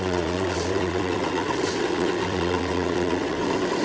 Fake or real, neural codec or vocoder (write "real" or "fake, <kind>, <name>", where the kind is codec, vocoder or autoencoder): fake, vocoder, WaveNeXt